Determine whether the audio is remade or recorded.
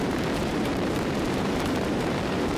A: remade